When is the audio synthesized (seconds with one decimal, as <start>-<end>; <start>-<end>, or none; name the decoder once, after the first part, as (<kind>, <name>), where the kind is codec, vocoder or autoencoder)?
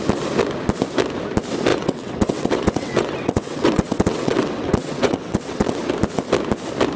1.7-5.9 (vocoder, WaveNeXt)